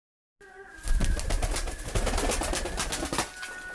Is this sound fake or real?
real